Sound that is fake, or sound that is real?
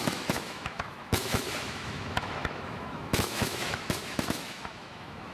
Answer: fake